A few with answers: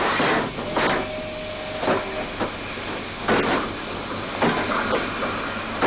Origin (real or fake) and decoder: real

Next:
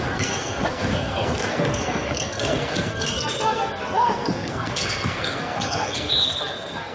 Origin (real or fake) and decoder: fake, codec, SNAC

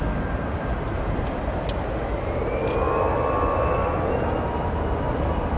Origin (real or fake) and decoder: real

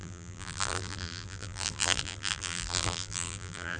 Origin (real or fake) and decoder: fake, vocoder, BigVGAN v2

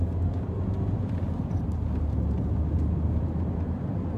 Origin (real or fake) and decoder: real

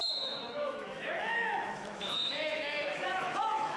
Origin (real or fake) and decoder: fake, autoencoder, DAC-VAE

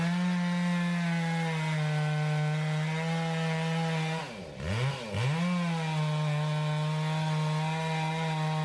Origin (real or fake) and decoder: real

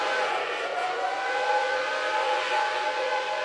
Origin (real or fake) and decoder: fake, vocoder, Vocos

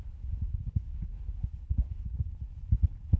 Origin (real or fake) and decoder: fake, codec, HILCodec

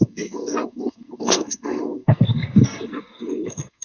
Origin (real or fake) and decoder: fake, codec, SNAC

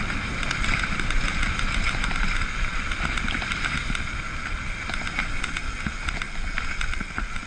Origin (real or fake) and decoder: real